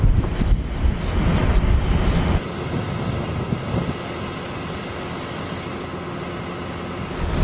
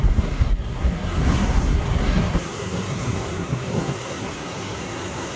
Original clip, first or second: first